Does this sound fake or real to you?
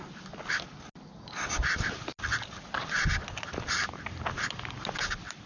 real